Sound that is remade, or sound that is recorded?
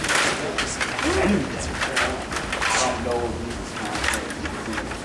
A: recorded